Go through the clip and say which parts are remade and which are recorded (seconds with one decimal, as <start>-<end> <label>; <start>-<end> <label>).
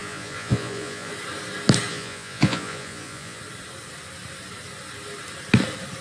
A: 0.0-1.1 remade; 1.1-1.9 recorded; 1.9-3.4 remade; 3.4-6.0 recorded